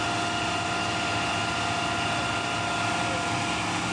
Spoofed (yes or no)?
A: no